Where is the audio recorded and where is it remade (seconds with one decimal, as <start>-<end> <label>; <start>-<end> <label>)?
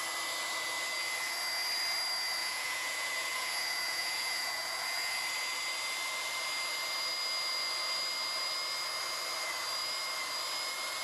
0.0-2.4 recorded; 2.4-5.1 remade; 5.1-11.0 recorded